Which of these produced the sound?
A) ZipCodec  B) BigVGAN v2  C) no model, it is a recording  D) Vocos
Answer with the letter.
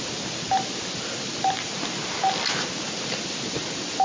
C